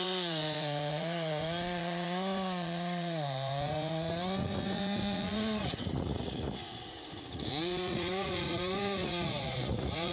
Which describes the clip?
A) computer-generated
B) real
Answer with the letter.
A